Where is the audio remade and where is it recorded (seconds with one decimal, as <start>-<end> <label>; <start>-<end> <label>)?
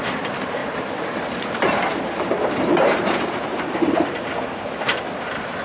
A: 0.0-5.6 remade